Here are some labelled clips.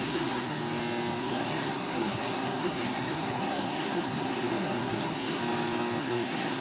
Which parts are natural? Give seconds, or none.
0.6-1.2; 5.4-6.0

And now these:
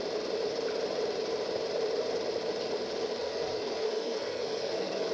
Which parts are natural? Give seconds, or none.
0.0-3.2

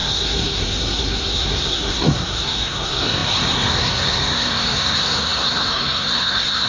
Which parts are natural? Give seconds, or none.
none

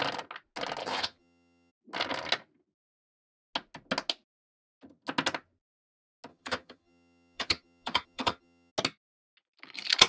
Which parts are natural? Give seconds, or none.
0.0-0.8; 1.7-6.3; 8.7-10.1

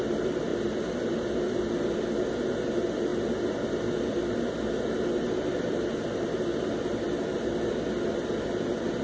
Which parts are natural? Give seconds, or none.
0.0-9.0

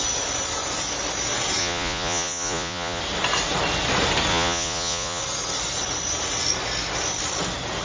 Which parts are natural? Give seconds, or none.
0.0-1.6; 3.0-4.3; 5.2-7.8

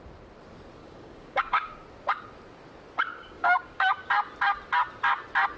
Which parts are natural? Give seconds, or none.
0.0-0.8; 1.8-3.1; 4.1-5.6

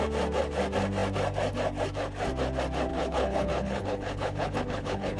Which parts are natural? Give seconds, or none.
0.0-2.9